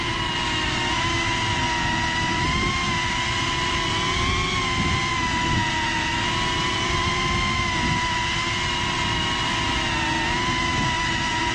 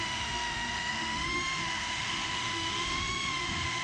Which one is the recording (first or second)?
first